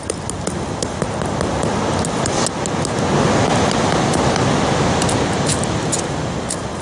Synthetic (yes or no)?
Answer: no